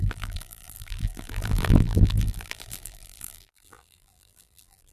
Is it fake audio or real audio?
fake